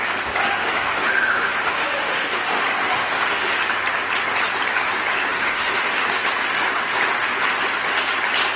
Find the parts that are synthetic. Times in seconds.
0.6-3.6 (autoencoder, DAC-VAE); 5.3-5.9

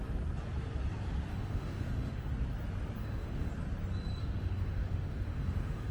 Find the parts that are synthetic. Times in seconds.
1.3-2.3 (autoencoder, DAC-VAE); 3.0-3.5; 4.2-5.9

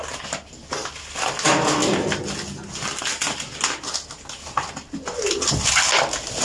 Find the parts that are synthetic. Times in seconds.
none

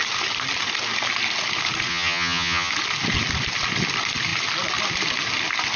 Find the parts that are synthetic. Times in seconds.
1.9-2.7 (vocoder, HiFi-GAN)

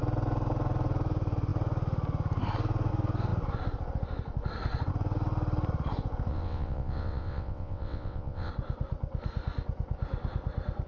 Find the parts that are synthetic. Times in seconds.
6.3-8.5 (vocoder, WaveNeXt)

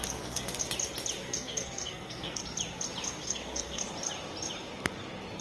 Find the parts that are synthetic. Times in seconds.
0.0-0.6 (codec, SNAC); 1.2-2.4; 3.2-3.8